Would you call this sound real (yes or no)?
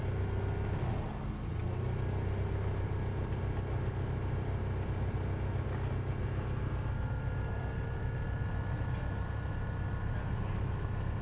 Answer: yes